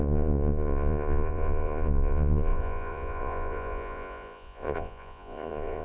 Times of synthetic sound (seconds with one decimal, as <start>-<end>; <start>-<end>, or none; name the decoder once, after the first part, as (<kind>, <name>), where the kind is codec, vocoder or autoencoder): 0.0-5.8 (vocoder, Vocos)